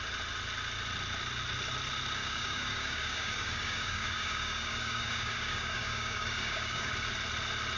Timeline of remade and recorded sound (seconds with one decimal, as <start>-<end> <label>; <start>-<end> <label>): 0.0-2.2 recorded; 2.2-6.9 remade; 6.9-7.8 recorded